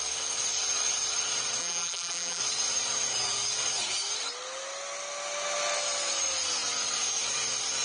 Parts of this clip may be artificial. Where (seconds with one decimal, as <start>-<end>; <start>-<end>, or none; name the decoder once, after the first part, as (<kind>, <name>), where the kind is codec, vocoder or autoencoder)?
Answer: 1.6-2.4 (vocoder, BigVGAN v2)